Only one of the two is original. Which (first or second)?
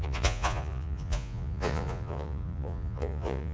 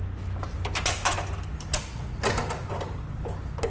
second